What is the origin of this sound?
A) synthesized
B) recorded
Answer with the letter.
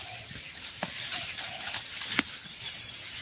B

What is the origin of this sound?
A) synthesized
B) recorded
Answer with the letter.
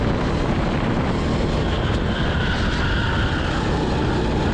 B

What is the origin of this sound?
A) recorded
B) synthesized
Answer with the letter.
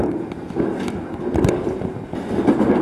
A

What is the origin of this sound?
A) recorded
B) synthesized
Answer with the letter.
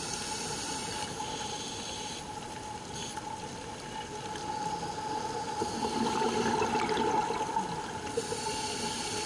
A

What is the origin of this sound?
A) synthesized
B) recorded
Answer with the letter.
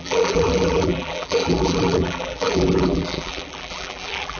A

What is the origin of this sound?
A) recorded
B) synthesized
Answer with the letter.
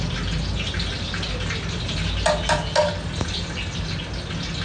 A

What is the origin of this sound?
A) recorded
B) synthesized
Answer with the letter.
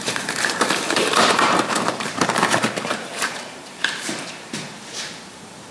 B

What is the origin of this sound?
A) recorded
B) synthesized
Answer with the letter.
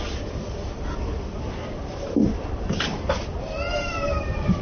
A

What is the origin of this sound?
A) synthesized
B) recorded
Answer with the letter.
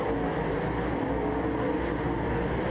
B